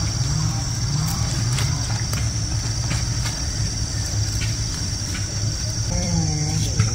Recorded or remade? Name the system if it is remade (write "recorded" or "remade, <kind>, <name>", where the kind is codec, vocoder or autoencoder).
remade, vocoder, BigVGAN v2